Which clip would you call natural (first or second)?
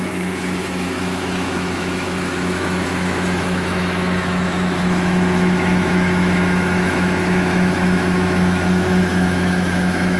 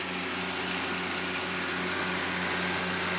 second